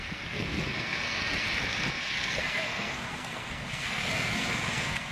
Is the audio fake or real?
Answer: fake